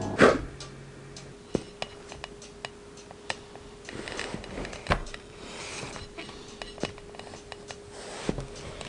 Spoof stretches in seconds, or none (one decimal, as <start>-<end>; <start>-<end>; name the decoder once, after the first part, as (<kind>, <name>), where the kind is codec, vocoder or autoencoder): 5.0-5.6 (vocoder, BigVGAN v2)